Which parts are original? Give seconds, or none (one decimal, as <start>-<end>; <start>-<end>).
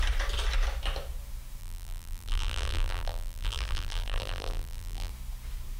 0.0-1.6; 5.1-5.8